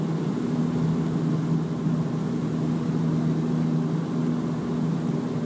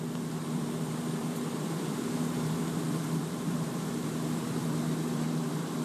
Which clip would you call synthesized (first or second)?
second